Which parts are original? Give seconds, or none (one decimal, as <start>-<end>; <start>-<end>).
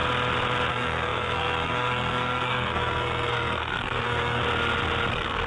0.0-0.7; 4.4-5.1